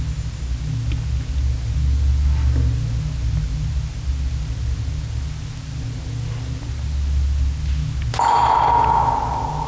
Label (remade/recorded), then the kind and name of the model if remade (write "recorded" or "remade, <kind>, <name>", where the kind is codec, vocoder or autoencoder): recorded